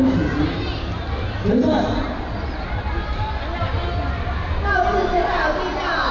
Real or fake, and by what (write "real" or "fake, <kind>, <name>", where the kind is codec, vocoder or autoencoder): real